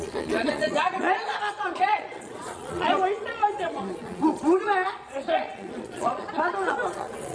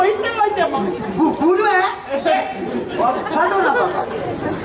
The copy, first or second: first